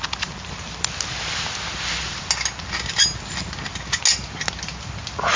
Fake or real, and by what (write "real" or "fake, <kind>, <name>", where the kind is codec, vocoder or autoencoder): real